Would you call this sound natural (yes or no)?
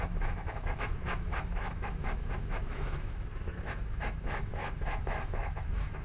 no